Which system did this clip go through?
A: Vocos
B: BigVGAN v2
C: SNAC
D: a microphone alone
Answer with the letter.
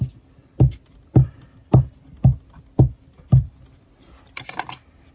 D